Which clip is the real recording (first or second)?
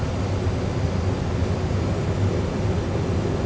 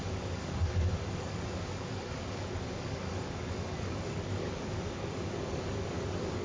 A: first